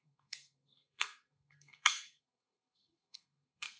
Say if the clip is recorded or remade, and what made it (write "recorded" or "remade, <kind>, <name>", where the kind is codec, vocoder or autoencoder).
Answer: remade, codec, SNAC